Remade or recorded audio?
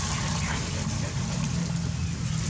recorded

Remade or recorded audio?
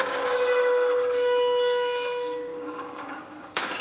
remade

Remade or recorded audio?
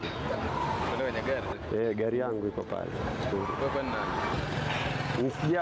recorded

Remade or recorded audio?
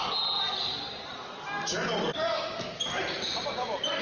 recorded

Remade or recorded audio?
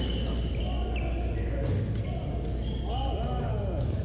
recorded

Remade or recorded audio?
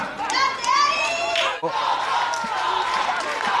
recorded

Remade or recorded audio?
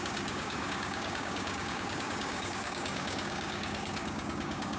remade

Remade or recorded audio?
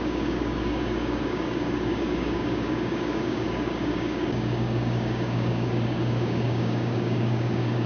remade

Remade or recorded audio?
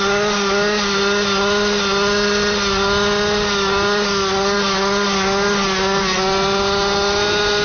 recorded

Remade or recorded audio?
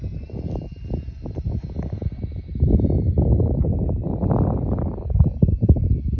recorded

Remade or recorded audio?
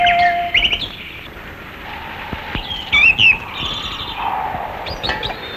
recorded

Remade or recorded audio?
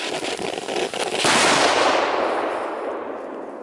recorded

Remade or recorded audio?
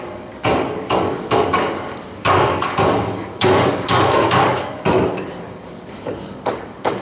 remade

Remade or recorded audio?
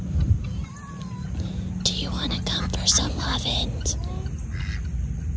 recorded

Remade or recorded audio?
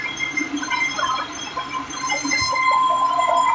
recorded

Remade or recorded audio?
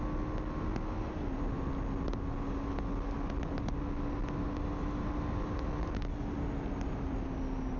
recorded